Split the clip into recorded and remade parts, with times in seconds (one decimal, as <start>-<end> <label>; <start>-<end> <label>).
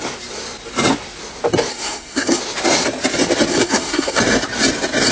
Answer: 0.0-1.7 recorded; 1.7-2.4 remade; 2.4-3.5 recorded; 3.5-4.2 remade; 4.2-5.1 recorded